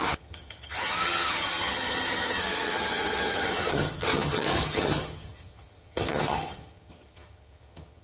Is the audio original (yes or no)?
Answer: no